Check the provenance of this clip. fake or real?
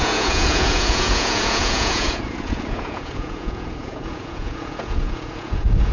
fake